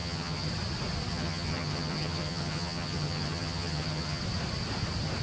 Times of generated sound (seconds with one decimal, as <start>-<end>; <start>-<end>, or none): 0.0-0.5; 1.1-4.2